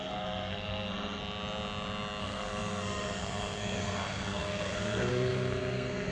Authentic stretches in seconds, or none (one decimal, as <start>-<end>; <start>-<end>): 1.2-2.2